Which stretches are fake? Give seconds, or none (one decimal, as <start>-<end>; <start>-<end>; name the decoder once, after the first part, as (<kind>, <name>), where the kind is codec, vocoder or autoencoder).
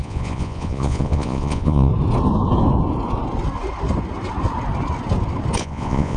0.0-1.9 (vocoder, Vocos); 5.6-6.2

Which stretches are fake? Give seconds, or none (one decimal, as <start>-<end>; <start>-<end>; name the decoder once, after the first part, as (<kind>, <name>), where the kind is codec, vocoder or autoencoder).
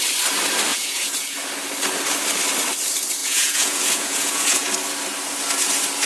0.7-1.5 (vocoder, Vocos); 3.2-4.7